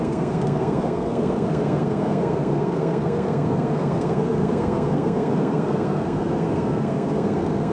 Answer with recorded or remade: remade